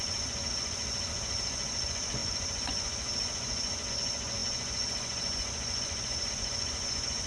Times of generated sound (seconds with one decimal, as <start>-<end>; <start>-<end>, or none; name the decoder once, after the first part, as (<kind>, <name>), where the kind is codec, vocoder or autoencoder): 0.0-7.3 (vocoder, Vocos)